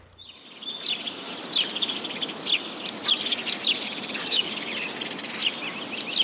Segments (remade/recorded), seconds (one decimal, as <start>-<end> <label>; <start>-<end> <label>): 0.0-4.2 recorded; 4.2-4.7 remade; 4.7-6.2 recorded